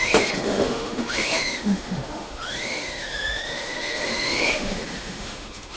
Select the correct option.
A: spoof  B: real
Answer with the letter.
A